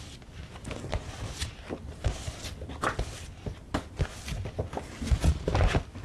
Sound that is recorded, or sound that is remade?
recorded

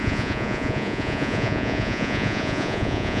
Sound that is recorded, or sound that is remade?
remade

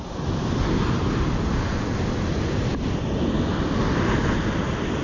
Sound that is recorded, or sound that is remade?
recorded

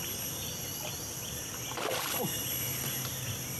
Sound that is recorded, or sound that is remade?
recorded